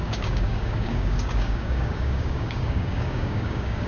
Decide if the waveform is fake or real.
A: fake